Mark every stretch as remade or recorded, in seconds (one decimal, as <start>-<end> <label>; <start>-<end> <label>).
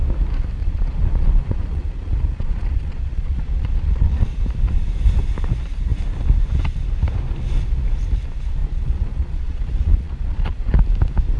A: 0.0-0.6 recorded; 0.6-4.4 remade; 4.4-8.6 recorded; 8.6-10.7 remade; 10.7-11.4 recorded